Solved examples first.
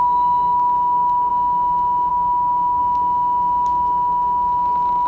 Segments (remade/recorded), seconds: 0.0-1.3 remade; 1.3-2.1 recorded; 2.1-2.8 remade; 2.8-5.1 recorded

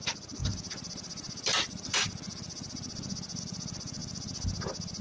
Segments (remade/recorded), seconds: 0.0-5.0 recorded